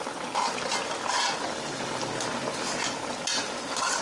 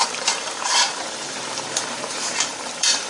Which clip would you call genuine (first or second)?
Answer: first